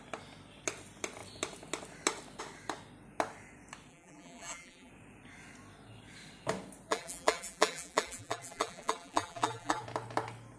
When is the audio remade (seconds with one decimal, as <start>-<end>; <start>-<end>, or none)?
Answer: 3.9-4.9; 6.9-9.8